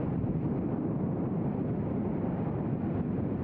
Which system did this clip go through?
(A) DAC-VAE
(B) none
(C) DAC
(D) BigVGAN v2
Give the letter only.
B